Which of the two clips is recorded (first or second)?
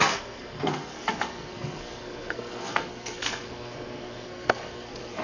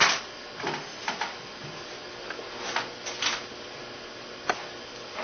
second